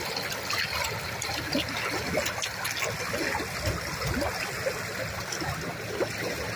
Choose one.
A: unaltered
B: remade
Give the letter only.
A